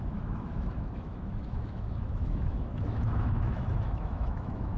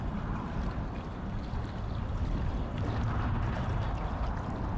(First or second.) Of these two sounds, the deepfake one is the first